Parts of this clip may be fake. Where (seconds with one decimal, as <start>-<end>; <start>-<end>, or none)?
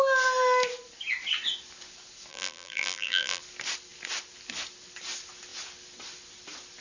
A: 2.3-3.4